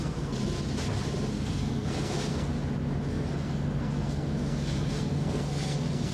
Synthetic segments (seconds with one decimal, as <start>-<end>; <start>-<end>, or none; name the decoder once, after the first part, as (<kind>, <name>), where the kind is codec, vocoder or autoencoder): 0.0-0.4 (codec, SNAC); 1.3-2.5; 3.1-6.1

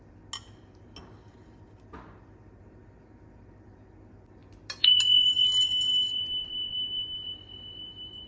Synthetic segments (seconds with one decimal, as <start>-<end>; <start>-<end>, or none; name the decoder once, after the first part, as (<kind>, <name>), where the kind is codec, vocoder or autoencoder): 4.4-5.5 (vocoder, BigVGAN v2); 5.9-8.3

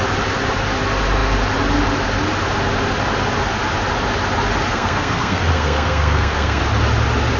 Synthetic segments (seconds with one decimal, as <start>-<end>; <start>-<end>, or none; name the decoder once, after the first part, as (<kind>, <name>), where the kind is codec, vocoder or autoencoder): 4.7-6.6 (codec, SNAC)

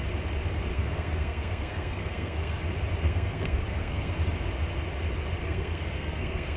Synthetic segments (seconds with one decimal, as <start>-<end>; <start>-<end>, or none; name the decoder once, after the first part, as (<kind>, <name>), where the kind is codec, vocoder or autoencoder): 0.7-2.6 (codec, SNAC); 3.0-4.1; 5.4-6.6

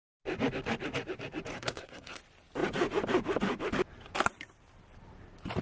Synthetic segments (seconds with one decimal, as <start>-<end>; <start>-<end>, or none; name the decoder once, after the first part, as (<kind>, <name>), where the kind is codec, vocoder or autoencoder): 1.5-2.2 (codec, SNAC)

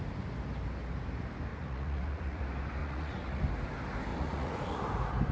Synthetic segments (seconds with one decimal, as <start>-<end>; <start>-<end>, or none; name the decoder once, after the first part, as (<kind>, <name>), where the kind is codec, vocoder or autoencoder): 1.5-2.4 (vocoder, Vocos); 2.8-3.4; 4.1-4.8